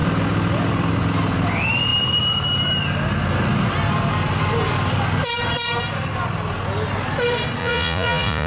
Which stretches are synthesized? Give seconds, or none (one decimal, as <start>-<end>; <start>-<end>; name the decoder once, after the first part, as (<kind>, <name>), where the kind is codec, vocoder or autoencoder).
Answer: 7.6-8.5 (vocoder, Vocos)